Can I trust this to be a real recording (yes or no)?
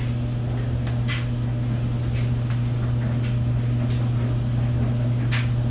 yes